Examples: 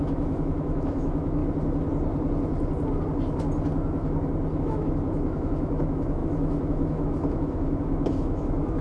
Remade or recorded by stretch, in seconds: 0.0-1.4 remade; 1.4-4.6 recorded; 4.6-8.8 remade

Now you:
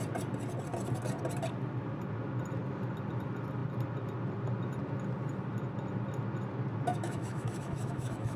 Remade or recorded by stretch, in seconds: 0.0-6.9 recorded; 6.9-8.4 remade